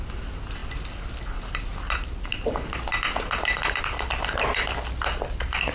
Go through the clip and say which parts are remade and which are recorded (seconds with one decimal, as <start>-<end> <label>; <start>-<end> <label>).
0.0-5.7 recorded